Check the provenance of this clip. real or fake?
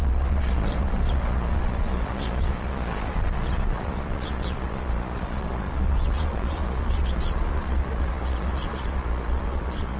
fake